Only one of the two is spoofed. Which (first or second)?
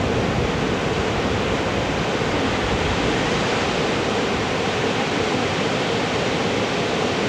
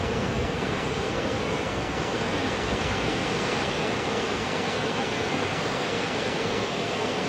second